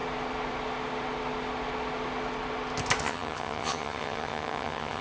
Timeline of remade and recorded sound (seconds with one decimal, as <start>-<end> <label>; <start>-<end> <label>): 0.0-3.0 recorded; 3.0-5.0 remade